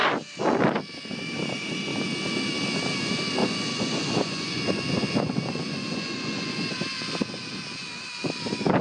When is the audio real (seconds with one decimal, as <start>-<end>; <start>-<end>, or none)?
0.0-3.4; 6.5-8.8